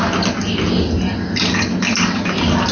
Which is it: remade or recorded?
recorded